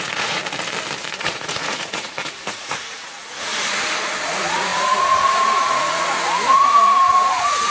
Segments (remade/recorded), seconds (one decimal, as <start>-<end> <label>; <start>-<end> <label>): 0.0-0.4 remade; 0.4-1.2 recorded; 1.2-3.5 remade; 3.5-4.3 recorded; 4.3-7.7 remade